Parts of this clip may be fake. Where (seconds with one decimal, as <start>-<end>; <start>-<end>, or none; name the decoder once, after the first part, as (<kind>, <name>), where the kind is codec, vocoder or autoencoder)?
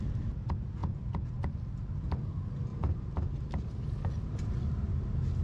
0.8-1.5 (vocoder, Vocos)